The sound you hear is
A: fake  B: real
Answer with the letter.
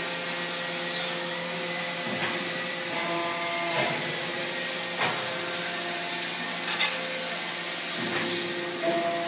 B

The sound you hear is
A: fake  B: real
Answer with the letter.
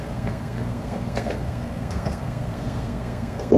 A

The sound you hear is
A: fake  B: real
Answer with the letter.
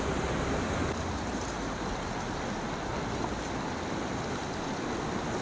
B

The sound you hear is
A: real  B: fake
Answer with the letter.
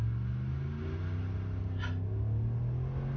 A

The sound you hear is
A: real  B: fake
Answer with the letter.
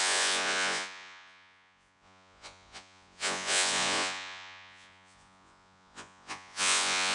B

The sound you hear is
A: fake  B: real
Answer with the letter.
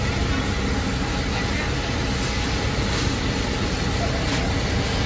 B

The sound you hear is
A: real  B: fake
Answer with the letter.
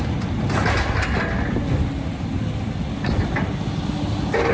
A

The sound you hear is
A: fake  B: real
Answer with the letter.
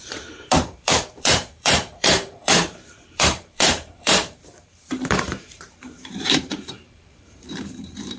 A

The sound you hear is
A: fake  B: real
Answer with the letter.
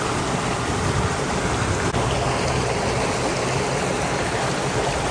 B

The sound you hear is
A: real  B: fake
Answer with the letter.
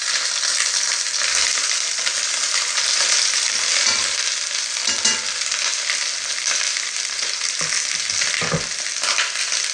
A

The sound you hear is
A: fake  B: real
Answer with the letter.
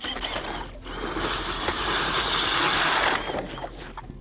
B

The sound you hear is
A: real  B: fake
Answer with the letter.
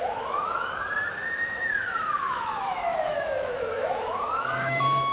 B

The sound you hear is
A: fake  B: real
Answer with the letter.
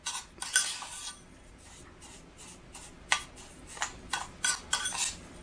B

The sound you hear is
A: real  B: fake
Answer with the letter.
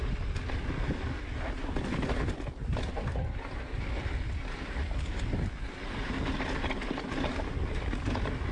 A